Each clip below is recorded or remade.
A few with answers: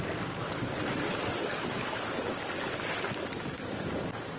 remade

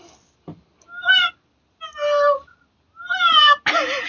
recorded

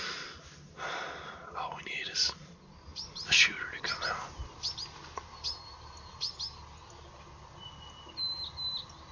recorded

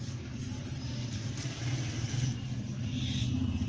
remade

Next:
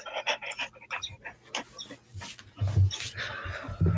recorded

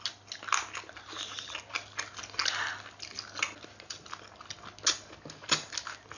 recorded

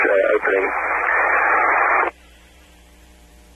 remade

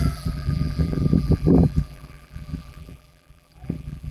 remade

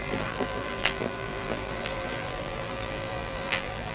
remade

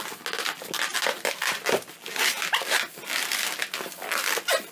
recorded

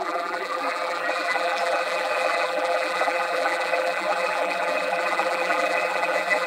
remade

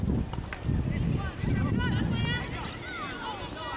recorded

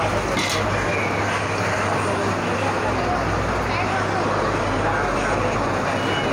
recorded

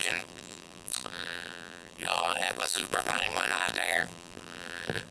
remade